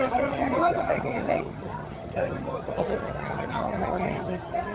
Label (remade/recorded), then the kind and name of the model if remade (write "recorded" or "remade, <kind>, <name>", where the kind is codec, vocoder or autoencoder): remade, vocoder, HiFi-GAN